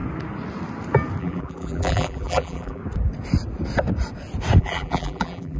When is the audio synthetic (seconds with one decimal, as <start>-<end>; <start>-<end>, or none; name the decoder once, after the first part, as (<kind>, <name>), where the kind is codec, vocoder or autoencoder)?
1.2-2.8 (vocoder, BigVGAN v2); 4.6-5.6